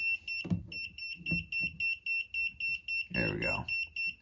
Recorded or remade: recorded